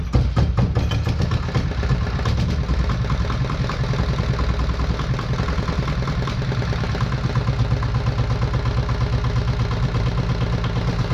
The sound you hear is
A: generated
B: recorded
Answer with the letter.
B